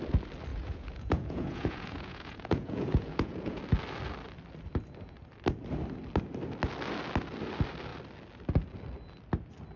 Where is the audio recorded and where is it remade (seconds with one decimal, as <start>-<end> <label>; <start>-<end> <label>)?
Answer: 0.0-0.5 recorded; 0.5-3.6 remade; 3.6-9.8 recorded